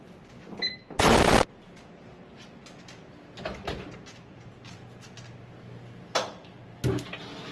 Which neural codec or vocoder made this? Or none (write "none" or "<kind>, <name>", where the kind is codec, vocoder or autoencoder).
none